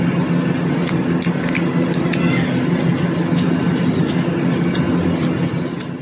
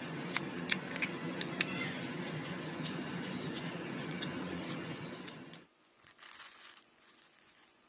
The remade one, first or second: second